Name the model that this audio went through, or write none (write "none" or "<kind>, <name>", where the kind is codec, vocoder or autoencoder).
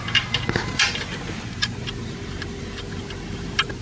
none